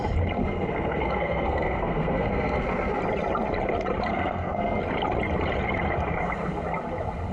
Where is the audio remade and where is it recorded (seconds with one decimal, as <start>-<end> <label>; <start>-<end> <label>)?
0.0-0.4 recorded; 0.4-3.0 remade; 3.0-4.1 recorded; 4.1-4.8 remade; 4.8-7.3 recorded